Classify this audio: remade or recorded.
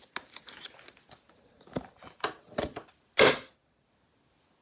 recorded